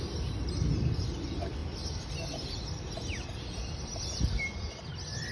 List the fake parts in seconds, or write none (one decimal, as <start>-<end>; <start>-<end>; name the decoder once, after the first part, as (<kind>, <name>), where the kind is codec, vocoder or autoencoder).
none